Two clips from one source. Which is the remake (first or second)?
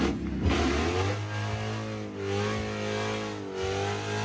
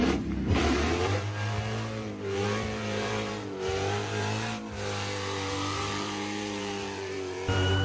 second